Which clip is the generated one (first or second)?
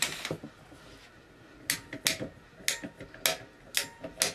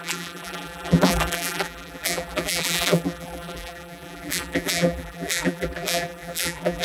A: second